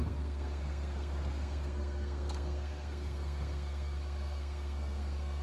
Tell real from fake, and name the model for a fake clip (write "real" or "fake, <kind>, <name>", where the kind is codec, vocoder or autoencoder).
fake, codec, SNAC